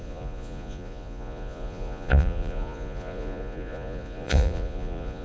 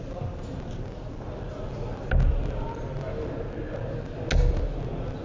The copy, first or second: first